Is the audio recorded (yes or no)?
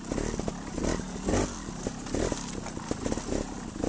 yes